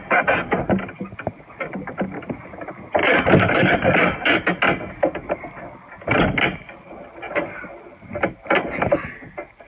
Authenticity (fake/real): real